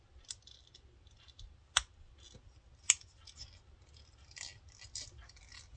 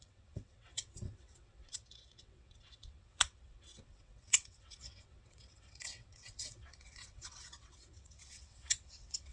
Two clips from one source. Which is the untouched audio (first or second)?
first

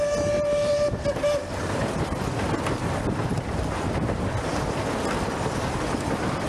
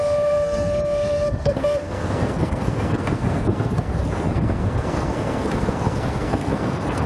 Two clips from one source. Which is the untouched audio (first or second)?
first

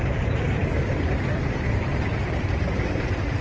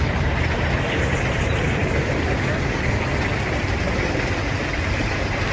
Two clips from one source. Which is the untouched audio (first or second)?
second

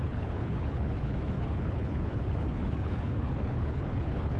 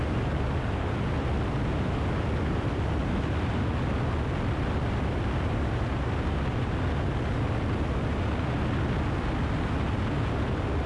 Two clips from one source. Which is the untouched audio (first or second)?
second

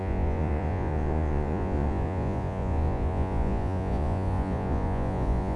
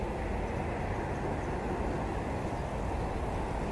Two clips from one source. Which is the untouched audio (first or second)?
second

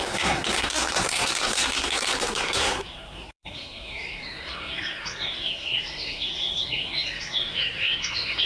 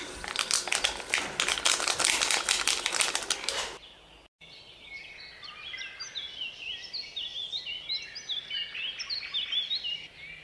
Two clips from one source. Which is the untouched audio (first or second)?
second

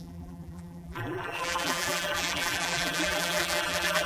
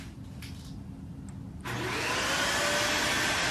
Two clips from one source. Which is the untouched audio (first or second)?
second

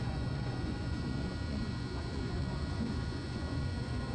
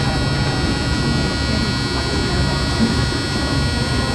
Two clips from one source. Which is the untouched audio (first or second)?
second